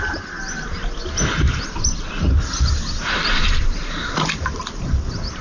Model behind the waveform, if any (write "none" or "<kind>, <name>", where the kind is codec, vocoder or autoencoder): none